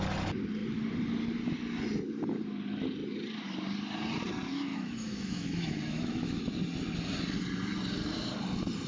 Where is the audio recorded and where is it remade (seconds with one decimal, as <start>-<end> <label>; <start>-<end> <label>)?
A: 0.0-4.7 recorded; 4.7-6.4 remade; 6.4-8.9 recorded

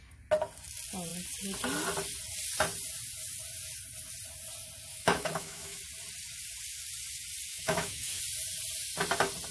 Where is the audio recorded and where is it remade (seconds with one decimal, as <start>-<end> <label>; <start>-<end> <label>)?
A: 0.0-4.9 recorded; 4.9-5.8 remade; 5.8-7.5 recorded; 7.5-8.2 remade; 8.2-9.5 recorded

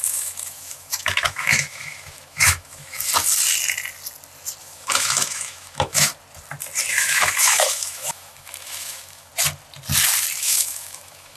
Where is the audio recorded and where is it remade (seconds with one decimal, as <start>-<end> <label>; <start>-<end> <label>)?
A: 0.0-3.1 remade; 3.1-4.6 recorded; 4.6-6.1 remade; 6.1-6.9 recorded; 6.9-9.3 remade; 9.3-10.4 recorded; 10.4-11.4 remade

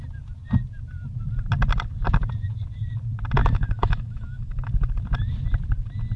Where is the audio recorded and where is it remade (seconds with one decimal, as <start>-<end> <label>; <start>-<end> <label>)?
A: 0.0-3.4 recorded; 3.4-4.7 remade; 4.7-6.2 recorded

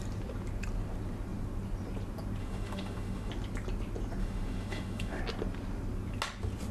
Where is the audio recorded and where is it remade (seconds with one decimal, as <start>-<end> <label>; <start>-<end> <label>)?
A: 0.0-2.4 recorded; 2.4-3.3 remade; 3.3-4.2 recorded; 4.2-5.2 remade; 5.2-6.7 recorded

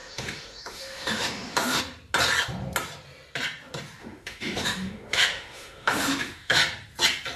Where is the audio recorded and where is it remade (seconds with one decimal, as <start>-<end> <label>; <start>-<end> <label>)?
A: 0.0-1.8 remade; 1.8-4.0 recorded; 4.0-6.6 remade; 6.6-7.4 recorded

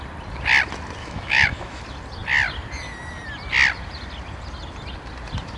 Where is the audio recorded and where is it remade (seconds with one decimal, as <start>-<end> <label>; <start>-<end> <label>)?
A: 0.0-1.0 recorded; 1.0-1.8 remade; 1.8-5.6 recorded